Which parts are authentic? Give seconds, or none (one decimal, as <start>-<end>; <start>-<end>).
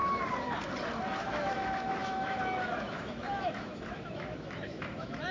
0.0-1.2